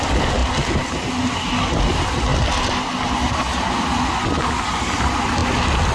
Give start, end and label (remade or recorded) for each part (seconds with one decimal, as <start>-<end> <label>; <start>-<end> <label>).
0.0-5.9 recorded